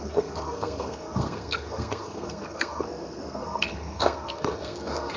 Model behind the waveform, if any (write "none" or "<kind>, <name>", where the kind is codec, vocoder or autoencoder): codec, SNAC